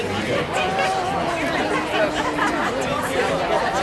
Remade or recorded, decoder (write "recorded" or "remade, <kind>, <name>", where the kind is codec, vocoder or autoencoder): recorded